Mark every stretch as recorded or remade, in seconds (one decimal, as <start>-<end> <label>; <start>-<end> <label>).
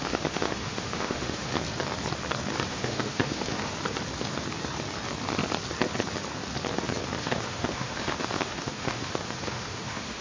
0.0-1.5 remade; 1.5-2.7 recorded; 2.7-3.7 remade; 3.7-7.2 recorded; 7.2-10.2 remade